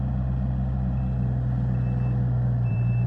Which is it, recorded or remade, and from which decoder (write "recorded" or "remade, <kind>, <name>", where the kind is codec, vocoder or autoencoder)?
remade, vocoder, BigVGAN v2